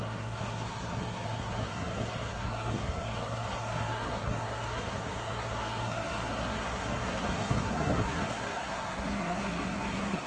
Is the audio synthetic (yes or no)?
yes